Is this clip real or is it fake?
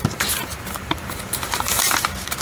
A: fake